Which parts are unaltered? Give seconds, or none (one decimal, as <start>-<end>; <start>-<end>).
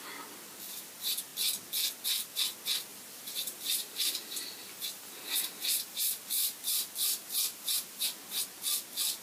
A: 0.0-2.9; 8.0-9.2